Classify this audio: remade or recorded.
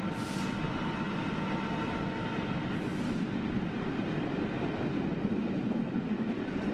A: recorded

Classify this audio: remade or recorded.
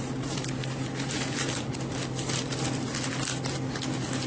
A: recorded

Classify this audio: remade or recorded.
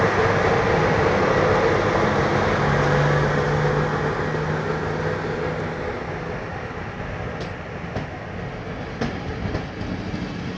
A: recorded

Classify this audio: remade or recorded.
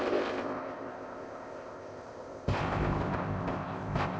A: remade